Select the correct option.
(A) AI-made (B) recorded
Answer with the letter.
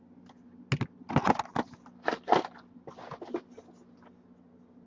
B